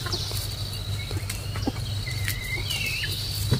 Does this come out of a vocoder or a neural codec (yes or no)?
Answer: yes